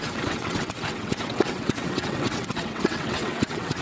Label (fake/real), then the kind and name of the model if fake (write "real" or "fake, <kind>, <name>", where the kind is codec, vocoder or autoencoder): fake, vocoder, WaveNeXt